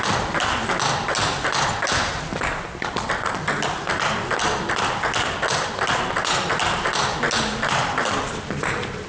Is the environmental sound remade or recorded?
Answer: recorded